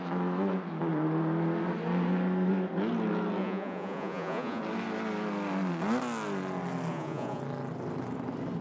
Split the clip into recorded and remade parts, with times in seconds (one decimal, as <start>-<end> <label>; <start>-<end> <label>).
0.0-3.4 recorded; 3.4-4.6 remade; 4.6-6.9 recorded; 6.9-7.4 remade; 7.4-8.6 recorded